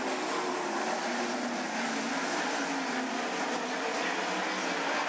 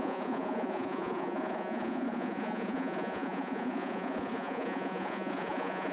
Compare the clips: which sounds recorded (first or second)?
first